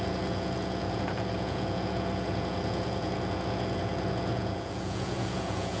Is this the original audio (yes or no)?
no